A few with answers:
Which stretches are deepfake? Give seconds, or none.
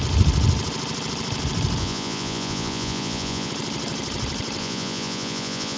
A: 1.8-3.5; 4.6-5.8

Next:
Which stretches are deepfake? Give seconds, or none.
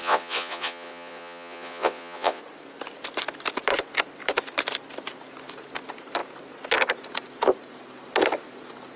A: 0.0-2.4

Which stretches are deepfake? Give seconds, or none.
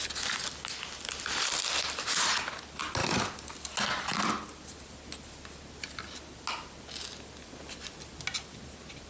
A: none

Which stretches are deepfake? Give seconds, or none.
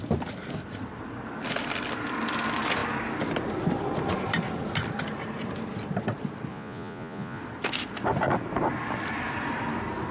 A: 6.5-7.4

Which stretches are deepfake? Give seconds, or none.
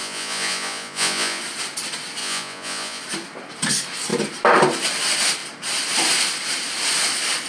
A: 0.0-1.4; 2.2-3.0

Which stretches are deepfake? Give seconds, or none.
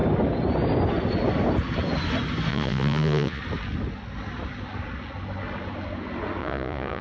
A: 2.5-3.4; 6.4-7.0